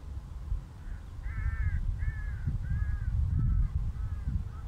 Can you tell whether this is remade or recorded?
recorded